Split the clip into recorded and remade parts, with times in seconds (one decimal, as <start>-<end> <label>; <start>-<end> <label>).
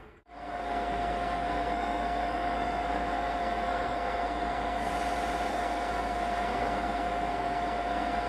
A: 0.0-4.9 remade; 4.9-5.5 recorded; 5.5-8.3 remade